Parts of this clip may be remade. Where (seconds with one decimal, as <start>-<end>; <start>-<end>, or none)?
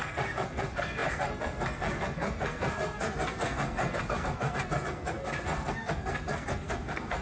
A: 0.0-7.2